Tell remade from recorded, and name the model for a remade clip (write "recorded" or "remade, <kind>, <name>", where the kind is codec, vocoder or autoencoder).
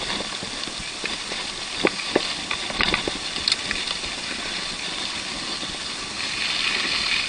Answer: recorded